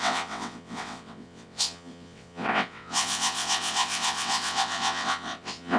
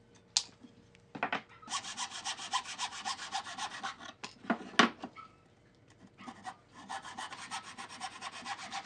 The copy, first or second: first